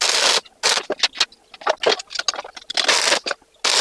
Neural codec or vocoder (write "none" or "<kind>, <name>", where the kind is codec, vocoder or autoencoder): none